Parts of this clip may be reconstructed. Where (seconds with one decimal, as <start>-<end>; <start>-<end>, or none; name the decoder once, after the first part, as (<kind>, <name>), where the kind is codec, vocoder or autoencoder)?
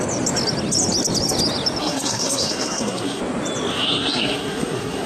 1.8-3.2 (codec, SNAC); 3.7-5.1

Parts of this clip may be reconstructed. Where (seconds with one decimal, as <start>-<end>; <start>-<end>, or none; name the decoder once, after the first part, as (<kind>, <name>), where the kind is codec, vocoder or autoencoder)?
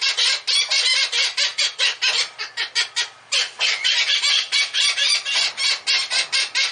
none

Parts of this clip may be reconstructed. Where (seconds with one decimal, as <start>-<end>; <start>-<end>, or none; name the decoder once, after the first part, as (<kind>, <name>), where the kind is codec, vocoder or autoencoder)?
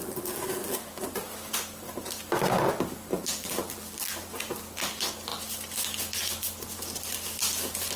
0.0-1.0 (vocoder, BigVGAN v2); 3.1-4.1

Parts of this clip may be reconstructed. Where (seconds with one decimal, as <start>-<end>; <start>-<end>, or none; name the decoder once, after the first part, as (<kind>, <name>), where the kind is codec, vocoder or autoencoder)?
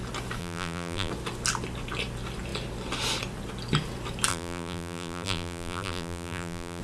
0.4-1.1 (vocoder, BigVGAN v2); 4.3-6.8